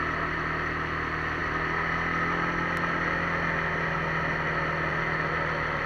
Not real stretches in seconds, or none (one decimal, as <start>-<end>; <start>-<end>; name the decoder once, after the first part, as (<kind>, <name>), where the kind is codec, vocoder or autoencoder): none

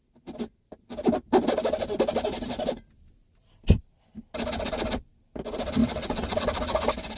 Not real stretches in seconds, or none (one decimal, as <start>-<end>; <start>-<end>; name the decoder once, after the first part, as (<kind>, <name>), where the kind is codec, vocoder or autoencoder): 5.8-6.4 (vocoder, WaveNeXt)

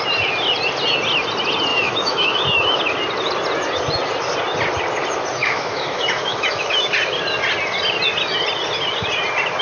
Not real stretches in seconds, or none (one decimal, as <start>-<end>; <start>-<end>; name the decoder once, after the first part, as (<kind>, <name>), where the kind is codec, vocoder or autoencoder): 1.7-2.8 (autoencoder, DAC-VAE); 5.4-6.9

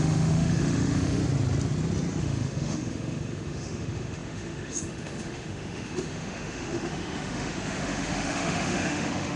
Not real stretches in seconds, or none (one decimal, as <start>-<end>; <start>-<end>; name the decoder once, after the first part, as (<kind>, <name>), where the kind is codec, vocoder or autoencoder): 0.0-1.2 (autoencoder, DAC-VAE); 2.2-9.4

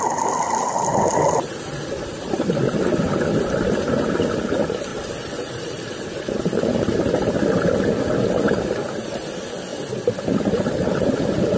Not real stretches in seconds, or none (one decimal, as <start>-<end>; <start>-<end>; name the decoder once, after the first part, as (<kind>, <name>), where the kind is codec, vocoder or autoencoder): 2.1-2.6 (vocoder, BigVGAN v2); 4.9-6.0